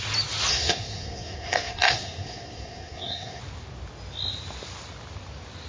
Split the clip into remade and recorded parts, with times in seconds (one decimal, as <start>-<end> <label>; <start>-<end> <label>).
0.0-0.5 recorded; 0.5-3.4 remade; 3.4-5.7 recorded